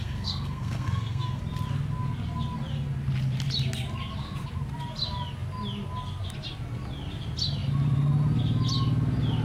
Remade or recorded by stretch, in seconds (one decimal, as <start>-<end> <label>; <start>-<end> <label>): 0.0-1.4 remade; 1.4-9.4 recorded